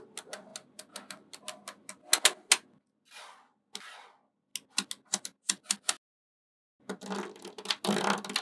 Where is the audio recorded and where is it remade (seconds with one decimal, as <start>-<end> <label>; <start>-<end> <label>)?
0.0-8.4 recorded